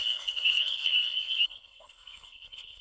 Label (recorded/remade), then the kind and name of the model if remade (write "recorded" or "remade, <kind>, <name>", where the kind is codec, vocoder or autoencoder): remade, codec, SNAC